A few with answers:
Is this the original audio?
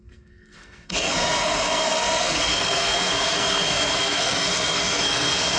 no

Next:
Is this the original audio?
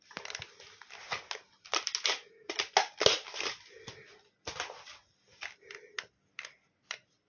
yes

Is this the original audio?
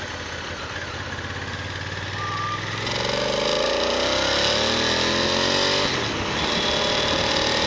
yes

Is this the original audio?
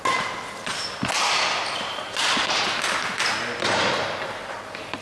yes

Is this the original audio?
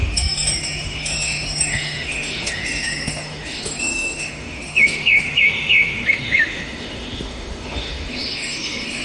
no